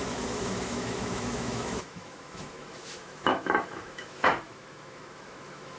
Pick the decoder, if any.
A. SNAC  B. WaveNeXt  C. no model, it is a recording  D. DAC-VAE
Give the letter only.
D